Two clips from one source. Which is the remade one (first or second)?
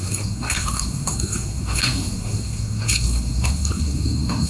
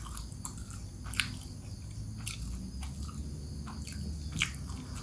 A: first